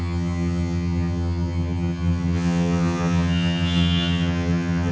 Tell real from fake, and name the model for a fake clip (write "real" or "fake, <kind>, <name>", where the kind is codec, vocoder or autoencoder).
fake, vocoder, HiFi-GAN